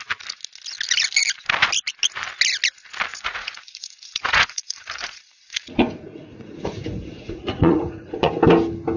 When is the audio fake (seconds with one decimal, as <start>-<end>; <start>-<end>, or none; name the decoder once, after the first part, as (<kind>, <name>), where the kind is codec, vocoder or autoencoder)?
3.1-8.3 (vocoder, Vocos)

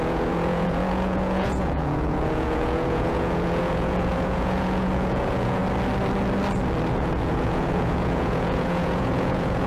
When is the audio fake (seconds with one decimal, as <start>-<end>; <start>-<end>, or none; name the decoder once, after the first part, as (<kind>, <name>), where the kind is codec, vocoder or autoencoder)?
0.0-5.6 (vocoder, Vocos); 6.9-9.7

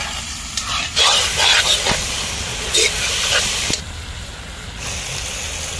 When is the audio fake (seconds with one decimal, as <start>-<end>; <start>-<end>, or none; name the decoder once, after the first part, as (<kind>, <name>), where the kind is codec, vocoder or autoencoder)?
2.5-3.1 (vocoder, Vocos)

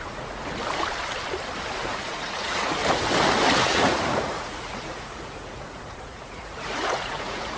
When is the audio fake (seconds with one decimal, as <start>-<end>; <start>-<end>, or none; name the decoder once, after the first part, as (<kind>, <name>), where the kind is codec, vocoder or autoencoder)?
0.0-0.4 (vocoder, Vocos); 1.7-2.8; 3.6-7.6

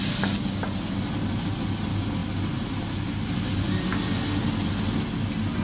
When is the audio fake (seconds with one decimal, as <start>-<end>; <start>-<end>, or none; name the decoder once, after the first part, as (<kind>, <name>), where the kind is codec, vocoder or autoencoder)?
none

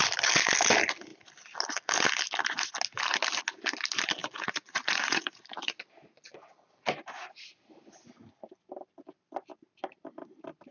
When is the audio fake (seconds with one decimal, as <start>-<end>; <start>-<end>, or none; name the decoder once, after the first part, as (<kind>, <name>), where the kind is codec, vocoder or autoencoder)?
4.2-5.7 (vocoder, Vocos)

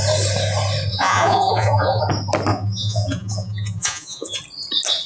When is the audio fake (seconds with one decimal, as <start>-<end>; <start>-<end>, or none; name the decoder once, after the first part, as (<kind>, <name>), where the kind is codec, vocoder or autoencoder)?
0.9-2.0 (vocoder, Vocos); 2.5-4.4

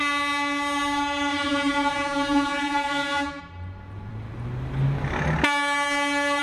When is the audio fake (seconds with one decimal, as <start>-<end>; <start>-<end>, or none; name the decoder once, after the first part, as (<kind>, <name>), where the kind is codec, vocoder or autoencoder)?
1.3-3.4 (vocoder, Vocos)